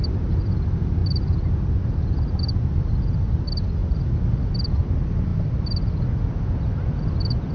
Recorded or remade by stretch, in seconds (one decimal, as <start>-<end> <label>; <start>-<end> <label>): 0.0-7.5 recorded

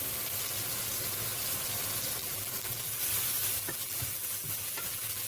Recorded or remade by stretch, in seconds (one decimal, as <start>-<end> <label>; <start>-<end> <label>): 0.0-2.2 recorded; 2.2-3.0 remade; 3.0-3.6 recorded; 3.6-5.3 remade

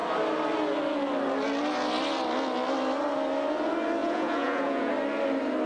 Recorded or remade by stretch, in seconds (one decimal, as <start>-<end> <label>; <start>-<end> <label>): 0.0-4.0 recorded; 4.0-4.9 remade; 4.9-5.7 recorded